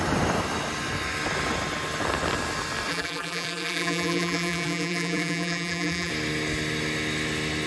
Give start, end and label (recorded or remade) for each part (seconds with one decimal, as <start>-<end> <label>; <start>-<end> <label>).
0.0-2.9 recorded; 2.9-6.1 remade; 6.1-7.7 recorded